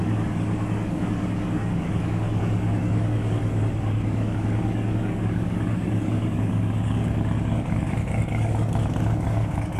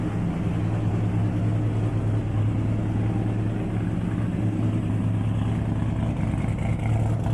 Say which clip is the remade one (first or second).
first